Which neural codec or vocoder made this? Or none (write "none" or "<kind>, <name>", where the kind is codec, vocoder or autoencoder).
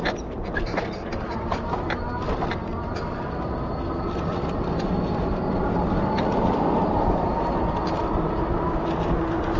none